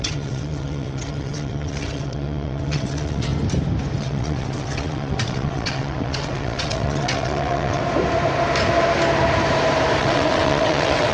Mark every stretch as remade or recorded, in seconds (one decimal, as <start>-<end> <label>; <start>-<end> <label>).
0.0-3.3 remade; 3.3-4.0 recorded; 4.0-7.8 remade; 7.8-10.0 recorded; 10.0-11.1 remade